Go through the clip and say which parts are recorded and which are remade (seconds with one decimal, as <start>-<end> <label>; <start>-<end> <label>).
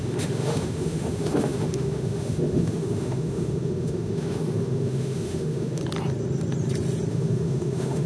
0.0-5.8 remade; 5.8-7.1 recorded; 7.1-8.1 remade